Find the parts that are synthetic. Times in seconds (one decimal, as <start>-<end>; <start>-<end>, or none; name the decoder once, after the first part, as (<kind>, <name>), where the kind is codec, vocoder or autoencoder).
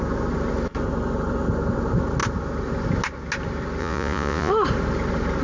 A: 3.8-4.5 (vocoder, Vocos)